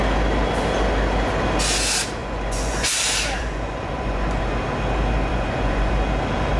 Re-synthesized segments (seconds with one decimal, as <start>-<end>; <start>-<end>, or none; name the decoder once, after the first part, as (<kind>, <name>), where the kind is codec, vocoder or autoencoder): 2.2-2.9 (vocoder, Vocos); 3.4-4.6; 5.3-5.9